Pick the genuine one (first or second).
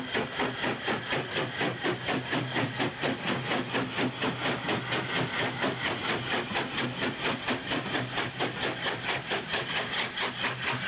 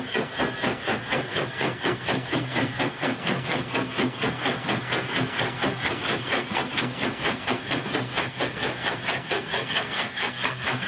first